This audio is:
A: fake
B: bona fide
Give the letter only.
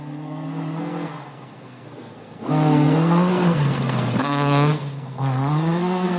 A